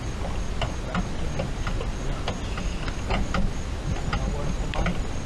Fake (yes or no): no